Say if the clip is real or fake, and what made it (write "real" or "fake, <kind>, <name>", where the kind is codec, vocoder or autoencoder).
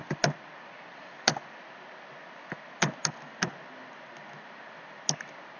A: real